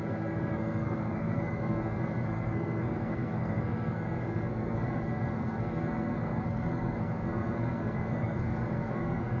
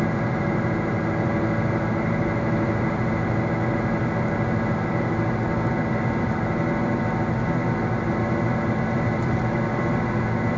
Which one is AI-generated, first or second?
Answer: first